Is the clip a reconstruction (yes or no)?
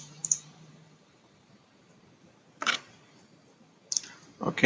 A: yes